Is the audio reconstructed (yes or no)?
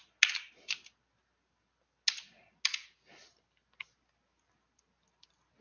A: no